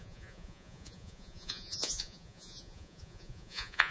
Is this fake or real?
fake